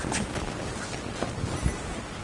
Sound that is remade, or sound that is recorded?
recorded